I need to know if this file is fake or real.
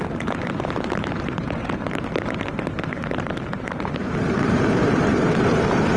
fake